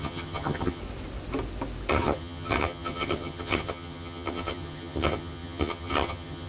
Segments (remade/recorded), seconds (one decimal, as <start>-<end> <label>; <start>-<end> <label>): 0.0-0.8 remade; 0.8-1.9 recorded; 1.9-6.5 remade